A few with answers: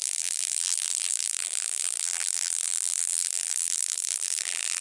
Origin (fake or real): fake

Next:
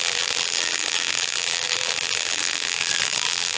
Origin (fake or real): fake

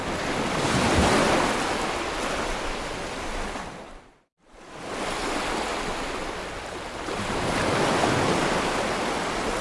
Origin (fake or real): real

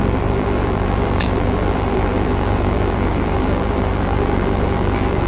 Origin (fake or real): fake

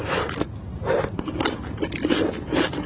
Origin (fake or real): real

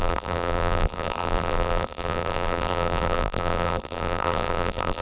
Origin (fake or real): fake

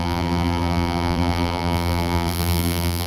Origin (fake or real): fake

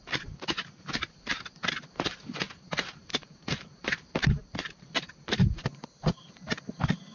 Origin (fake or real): fake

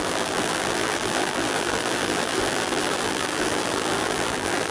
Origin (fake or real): fake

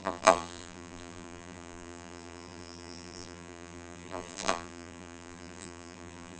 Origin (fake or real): fake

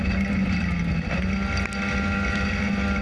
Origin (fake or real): real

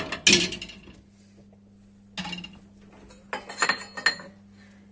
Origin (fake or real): real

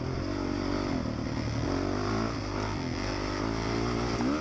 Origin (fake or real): real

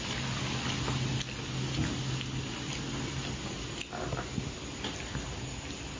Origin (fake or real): real